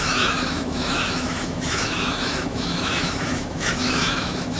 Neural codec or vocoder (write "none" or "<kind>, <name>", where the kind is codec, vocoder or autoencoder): autoencoder, DAC-VAE